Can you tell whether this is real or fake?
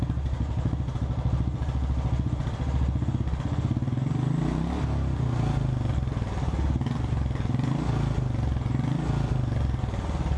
real